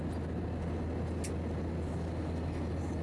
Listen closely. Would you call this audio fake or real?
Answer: real